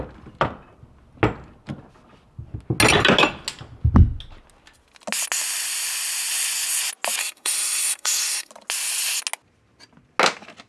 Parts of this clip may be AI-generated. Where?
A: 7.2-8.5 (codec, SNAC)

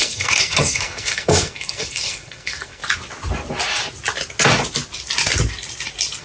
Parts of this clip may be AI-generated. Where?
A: 0.0-2.8 (codec, SNAC)

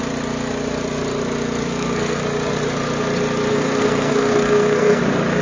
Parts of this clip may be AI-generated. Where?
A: 1.6-2.2 (codec, SNAC); 3.5-5.0

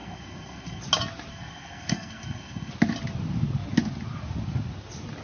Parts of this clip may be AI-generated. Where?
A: 0.0-0.8 (codec, SNAC); 1.3-2.7

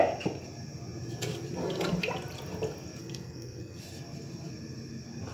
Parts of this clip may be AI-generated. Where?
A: 3.0-3.8 (codec, SNAC)

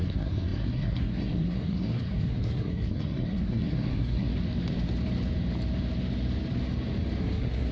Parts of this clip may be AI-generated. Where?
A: 0.0-4.3 (codec, SNAC); 7.2-7.7

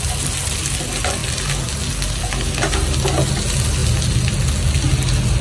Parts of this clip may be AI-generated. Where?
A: none

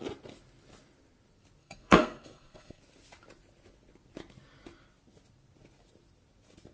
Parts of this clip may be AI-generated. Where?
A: 1.6-2.8 (codec, SNAC)